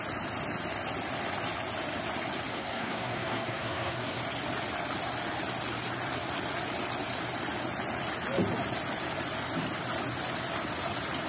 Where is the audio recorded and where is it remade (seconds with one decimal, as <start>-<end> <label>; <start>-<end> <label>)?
0.0-2.5 recorded; 2.5-4.2 remade; 4.2-11.3 recorded